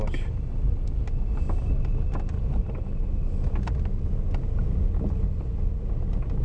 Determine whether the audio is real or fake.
real